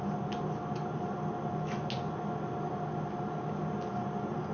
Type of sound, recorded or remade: recorded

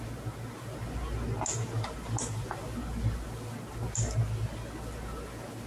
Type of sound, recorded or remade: recorded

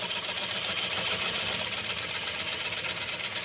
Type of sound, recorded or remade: recorded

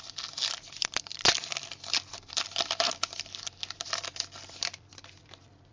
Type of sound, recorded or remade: remade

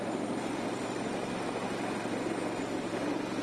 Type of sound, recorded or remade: remade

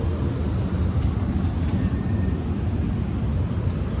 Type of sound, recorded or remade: recorded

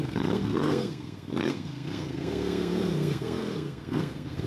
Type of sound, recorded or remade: remade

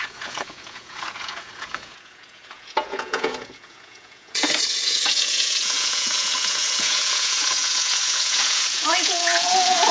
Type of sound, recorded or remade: remade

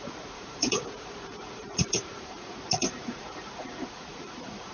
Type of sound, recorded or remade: remade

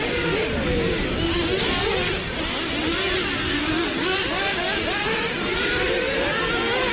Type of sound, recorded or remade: recorded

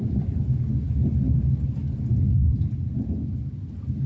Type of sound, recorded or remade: recorded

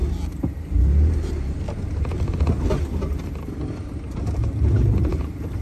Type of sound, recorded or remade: recorded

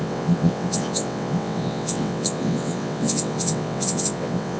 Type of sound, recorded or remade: remade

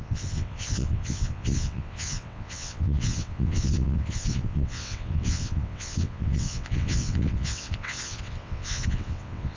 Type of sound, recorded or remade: remade